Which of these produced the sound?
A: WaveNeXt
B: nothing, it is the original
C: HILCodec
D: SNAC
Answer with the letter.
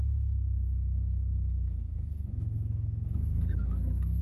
D